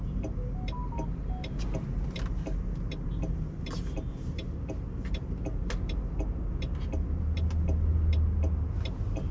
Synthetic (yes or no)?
no